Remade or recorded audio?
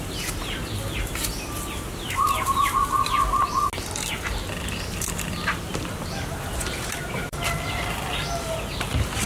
recorded